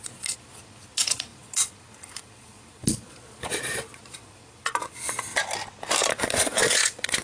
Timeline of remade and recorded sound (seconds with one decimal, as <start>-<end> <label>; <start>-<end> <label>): 0.0-5.3 remade; 5.3-6.1 recorded; 6.1-7.2 remade